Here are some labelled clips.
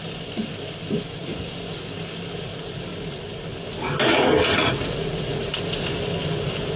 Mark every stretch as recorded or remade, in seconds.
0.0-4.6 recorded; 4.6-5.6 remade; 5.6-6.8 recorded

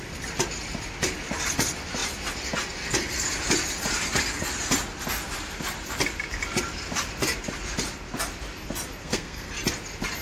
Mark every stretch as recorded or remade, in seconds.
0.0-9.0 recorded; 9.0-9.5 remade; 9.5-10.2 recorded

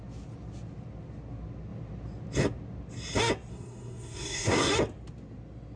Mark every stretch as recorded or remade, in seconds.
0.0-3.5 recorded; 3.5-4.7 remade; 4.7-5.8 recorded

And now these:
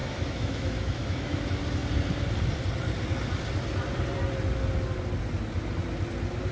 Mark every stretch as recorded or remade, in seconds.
0.0-1.4 remade; 1.4-6.5 recorded

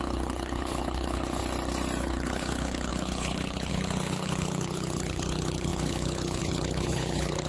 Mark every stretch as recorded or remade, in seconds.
0.0-1.4 remade; 1.4-2.0 recorded; 2.0-7.5 remade

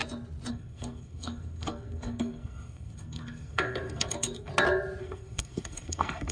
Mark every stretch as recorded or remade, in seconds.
0.0-0.5 recorded; 0.5-4.5 remade; 4.5-5.0 recorded; 5.0-6.3 remade

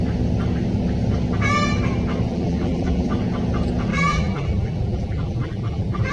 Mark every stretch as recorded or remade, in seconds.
0.0-2.3 recorded; 2.3-3.1 remade; 3.1-3.9 recorded; 3.9-6.1 remade

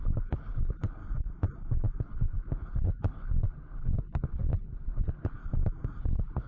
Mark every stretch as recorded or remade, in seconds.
0.0-1.0 remade; 1.0-2.0 recorded; 2.0-5.4 remade; 5.4-6.0 recorded; 6.0-6.5 remade